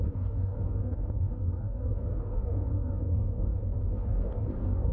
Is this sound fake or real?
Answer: fake